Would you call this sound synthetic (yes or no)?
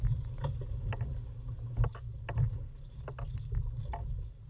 no